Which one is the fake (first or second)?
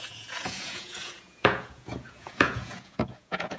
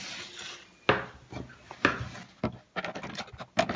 first